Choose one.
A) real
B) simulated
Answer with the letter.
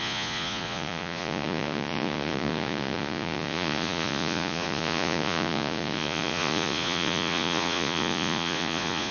B